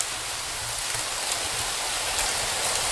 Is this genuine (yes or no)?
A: yes